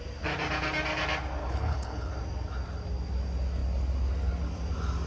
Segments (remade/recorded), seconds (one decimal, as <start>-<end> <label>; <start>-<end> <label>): 0.0-1.4 recorded; 1.4-2.1 remade; 2.1-5.1 recorded